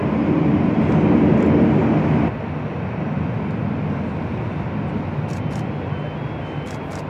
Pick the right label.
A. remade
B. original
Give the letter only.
B